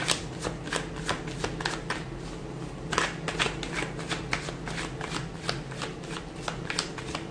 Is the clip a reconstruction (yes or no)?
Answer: no